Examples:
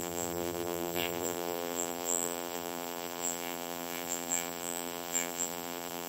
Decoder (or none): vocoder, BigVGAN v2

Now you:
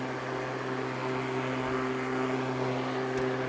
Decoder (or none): none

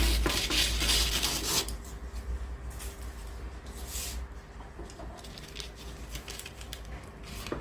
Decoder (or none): none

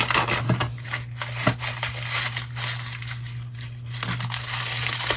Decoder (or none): none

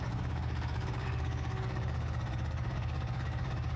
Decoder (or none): codec, DAC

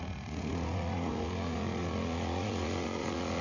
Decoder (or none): vocoder, Vocos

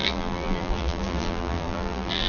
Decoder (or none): vocoder, BigVGAN v2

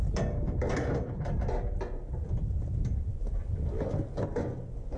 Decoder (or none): none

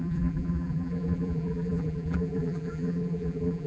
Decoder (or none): vocoder, BigVGAN v2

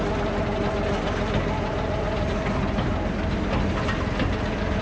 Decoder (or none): none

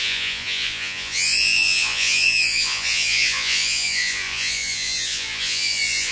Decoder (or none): vocoder, Vocos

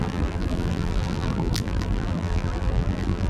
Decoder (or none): vocoder, BigVGAN v2